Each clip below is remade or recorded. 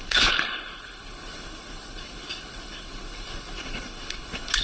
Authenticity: remade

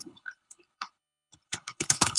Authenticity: remade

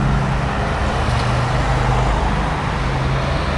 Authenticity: recorded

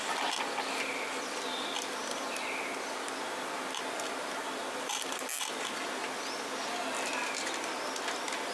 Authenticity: recorded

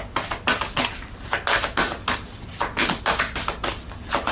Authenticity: recorded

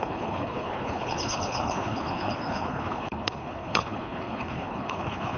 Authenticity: remade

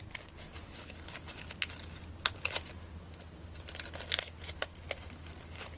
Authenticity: recorded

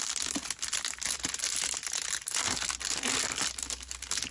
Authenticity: recorded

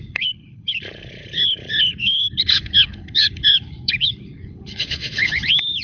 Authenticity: remade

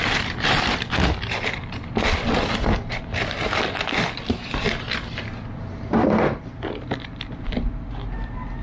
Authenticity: recorded